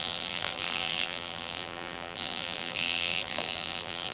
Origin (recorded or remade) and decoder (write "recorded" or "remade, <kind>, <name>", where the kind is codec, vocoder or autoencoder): remade, vocoder, BigVGAN v2